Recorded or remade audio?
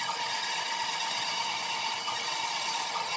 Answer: recorded